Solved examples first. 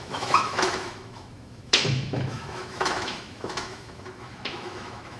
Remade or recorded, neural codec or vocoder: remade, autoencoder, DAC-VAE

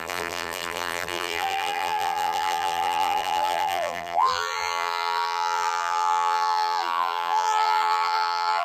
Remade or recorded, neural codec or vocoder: remade, vocoder, BigVGAN v2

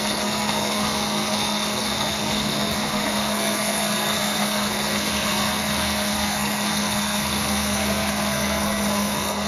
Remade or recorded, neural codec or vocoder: remade, codec, SNAC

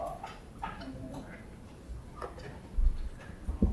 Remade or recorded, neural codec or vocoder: recorded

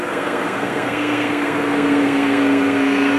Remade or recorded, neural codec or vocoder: remade, codec, SNAC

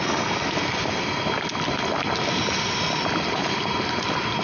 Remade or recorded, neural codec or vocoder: recorded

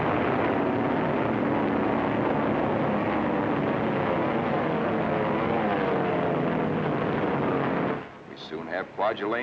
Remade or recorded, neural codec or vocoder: recorded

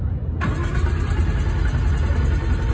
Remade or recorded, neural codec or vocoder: recorded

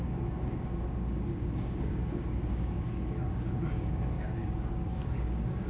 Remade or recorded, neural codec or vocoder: remade, codec, DAC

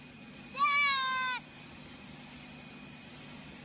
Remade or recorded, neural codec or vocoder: recorded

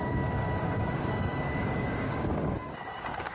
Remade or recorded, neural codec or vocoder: remade, codec, DAC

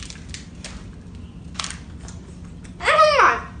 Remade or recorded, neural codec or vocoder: recorded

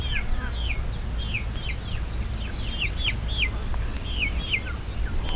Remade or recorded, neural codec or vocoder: recorded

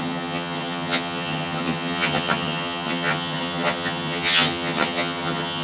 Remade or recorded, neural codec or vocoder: remade, vocoder, HiFi-GAN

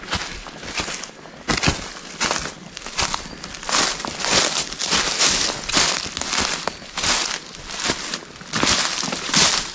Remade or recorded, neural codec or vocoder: recorded